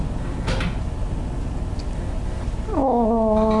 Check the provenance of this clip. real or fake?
real